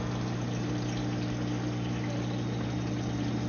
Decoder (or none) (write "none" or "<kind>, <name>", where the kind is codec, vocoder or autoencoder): none